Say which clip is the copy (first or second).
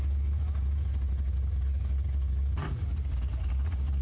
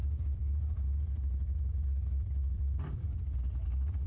second